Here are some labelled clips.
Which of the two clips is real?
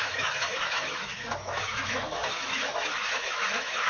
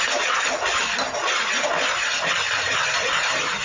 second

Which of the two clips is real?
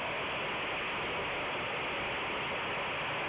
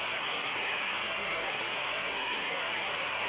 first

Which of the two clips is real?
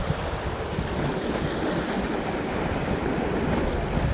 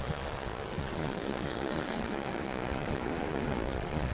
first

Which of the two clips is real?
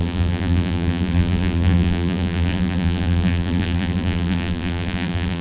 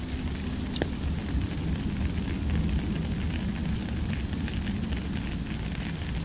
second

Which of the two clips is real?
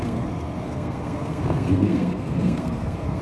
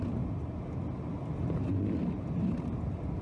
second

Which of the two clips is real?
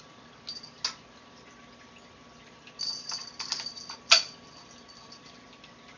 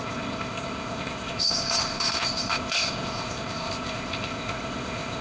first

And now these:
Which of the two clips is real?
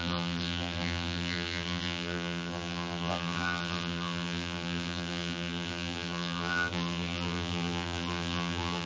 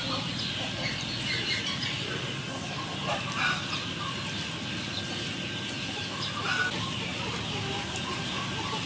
second